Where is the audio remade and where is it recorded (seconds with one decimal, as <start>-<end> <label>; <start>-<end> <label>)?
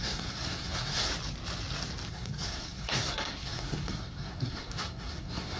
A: 0.0-1.1 remade; 1.1-2.1 recorded; 2.1-5.6 remade